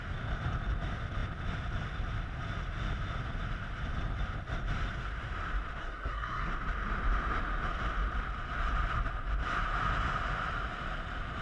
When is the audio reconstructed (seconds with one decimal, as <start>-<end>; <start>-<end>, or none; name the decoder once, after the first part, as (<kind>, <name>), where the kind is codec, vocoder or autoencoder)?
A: 5.8-6.5 (codec, SNAC)